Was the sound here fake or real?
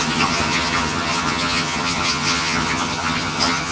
fake